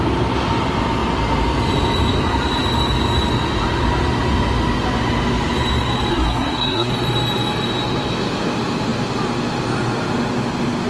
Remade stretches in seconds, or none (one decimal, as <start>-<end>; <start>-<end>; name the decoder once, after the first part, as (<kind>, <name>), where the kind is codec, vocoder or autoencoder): 6.1-6.9 (codec, SNAC)